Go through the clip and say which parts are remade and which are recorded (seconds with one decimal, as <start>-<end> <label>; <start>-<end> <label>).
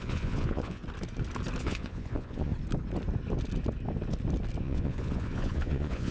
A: 0.0-0.8 remade; 0.8-1.6 recorded; 1.6-2.5 remade; 2.5-4.6 recorded; 4.6-6.1 remade